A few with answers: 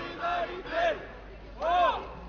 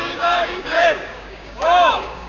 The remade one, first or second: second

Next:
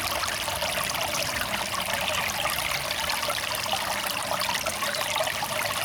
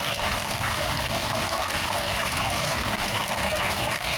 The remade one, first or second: second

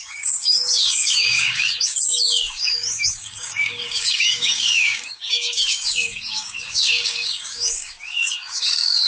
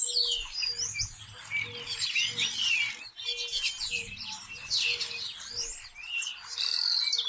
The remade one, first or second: first